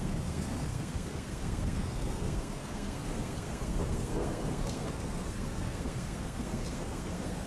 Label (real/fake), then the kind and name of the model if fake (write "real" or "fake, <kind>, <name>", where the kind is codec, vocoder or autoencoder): fake, codec, SNAC